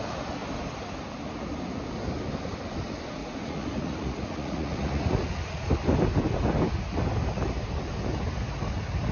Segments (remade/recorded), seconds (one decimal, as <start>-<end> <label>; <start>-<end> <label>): 0.0-3.2 recorded; 3.2-5.7 remade; 5.7-9.1 recorded